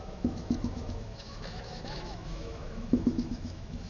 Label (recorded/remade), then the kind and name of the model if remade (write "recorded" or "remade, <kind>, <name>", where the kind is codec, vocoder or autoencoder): remade, autoencoder, DAC-VAE